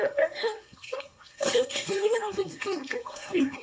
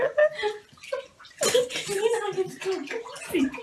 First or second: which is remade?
first